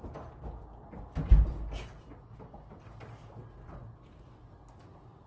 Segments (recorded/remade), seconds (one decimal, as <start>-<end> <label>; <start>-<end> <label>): 0.0-5.3 recorded